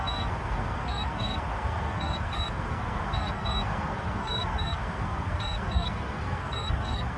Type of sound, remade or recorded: remade